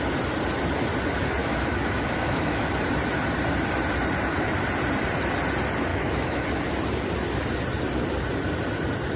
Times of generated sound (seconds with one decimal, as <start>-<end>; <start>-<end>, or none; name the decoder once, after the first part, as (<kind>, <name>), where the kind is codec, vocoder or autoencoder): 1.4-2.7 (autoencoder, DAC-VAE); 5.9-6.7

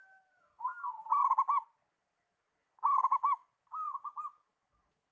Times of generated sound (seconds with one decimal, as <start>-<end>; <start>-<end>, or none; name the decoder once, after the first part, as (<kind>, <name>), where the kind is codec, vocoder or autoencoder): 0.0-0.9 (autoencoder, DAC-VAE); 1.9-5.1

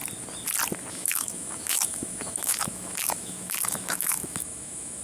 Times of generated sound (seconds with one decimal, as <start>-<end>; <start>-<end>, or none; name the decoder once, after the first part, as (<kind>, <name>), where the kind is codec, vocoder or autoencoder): 0.9-5.0 (autoencoder, DAC-VAE)

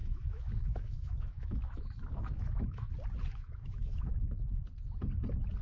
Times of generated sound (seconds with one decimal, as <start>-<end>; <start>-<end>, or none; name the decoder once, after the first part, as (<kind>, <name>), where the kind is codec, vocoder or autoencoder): 0.0-2.9 (autoencoder, DAC-VAE); 3.3-4.1